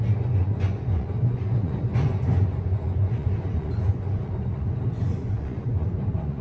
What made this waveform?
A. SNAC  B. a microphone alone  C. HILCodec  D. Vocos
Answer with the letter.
D